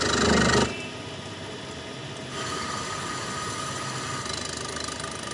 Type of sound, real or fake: real